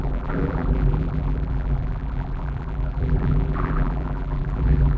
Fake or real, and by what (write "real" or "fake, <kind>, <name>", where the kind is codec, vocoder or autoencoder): fake, vocoder, BigVGAN v2